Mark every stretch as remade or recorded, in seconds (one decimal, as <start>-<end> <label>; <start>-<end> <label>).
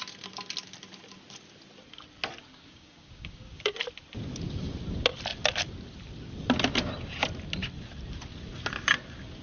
0.0-2.4 recorded; 2.4-3.7 remade; 3.7-9.4 recorded